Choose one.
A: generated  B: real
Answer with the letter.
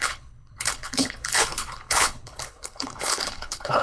A